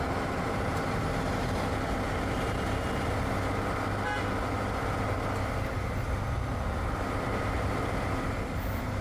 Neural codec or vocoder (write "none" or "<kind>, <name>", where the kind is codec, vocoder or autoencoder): none